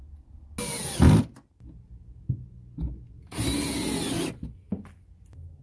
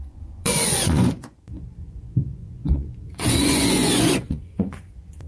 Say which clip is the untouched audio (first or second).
first